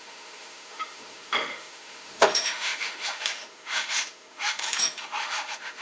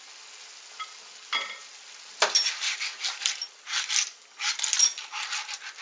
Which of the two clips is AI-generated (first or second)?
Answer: first